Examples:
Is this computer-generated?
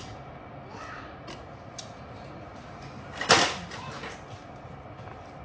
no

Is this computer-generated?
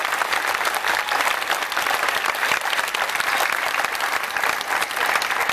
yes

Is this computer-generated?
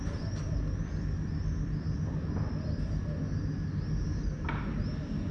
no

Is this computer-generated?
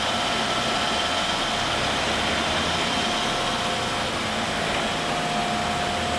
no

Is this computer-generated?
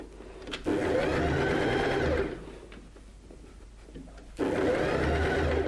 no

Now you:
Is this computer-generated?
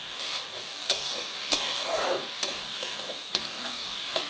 yes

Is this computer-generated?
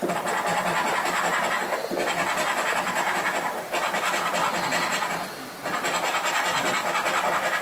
no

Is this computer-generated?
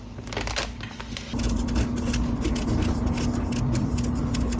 no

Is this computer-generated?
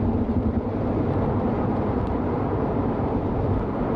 yes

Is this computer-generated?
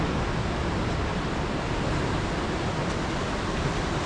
no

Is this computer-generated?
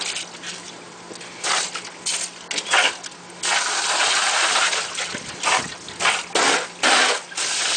no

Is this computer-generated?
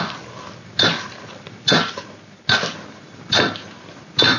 no